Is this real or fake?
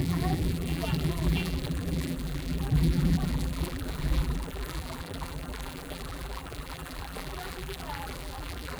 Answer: fake